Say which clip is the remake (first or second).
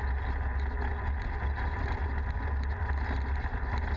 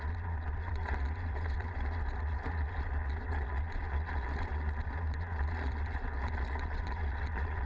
second